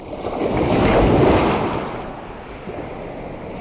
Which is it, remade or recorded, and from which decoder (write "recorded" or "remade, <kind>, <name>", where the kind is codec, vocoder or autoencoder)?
recorded